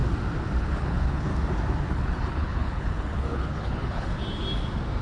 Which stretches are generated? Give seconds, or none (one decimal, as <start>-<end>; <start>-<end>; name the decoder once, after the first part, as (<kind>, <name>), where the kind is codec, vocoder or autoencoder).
0.6-1.3 (codec, HILCodec); 1.9-4.2

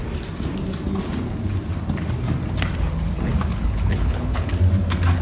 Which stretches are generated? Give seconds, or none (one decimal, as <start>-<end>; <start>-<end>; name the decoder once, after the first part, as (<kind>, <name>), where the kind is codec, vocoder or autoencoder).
3.5-4.5 (codec, HILCodec)